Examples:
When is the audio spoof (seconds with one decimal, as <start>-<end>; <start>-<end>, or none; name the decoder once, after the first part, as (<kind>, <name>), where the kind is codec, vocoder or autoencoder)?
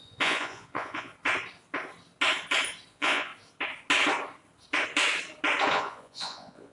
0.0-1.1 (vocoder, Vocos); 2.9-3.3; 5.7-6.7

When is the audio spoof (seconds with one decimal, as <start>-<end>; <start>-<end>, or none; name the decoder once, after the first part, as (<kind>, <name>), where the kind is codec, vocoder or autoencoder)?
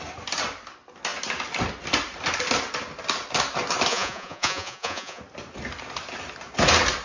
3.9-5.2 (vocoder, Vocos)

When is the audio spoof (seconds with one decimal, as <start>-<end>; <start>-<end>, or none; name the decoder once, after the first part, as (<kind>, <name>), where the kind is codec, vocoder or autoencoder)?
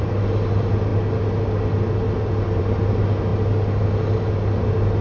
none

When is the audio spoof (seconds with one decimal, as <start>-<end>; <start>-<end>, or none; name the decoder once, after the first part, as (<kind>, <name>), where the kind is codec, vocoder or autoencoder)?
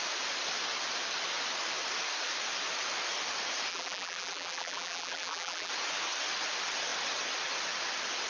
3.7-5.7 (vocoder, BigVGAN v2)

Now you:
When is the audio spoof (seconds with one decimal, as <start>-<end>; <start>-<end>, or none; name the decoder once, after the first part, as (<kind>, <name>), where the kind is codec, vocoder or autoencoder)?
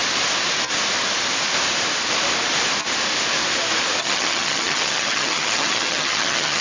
4.0-6.6 (vocoder, HiFi-GAN)